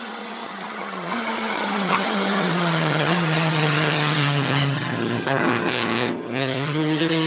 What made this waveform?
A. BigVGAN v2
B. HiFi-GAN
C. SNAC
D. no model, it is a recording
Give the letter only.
B